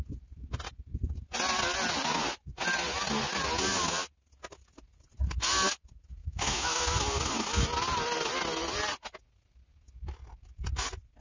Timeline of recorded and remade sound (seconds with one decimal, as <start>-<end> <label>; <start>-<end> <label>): 0.0-6.2 recorded; 6.2-6.8 remade; 6.8-11.2 recorded